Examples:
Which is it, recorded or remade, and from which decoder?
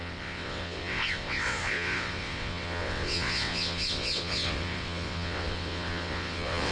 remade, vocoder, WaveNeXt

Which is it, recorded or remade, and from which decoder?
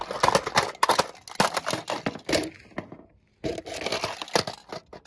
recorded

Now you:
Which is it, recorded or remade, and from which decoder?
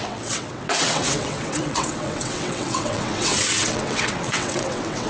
remade, vocoder, WaveNeXt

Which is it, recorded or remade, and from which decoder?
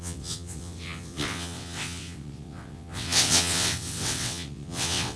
remade, vocoder, WaveNeXt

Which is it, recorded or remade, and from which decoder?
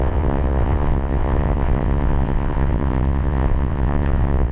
remade, vocoder, WaveNeXt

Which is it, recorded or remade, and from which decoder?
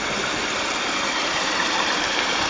recorded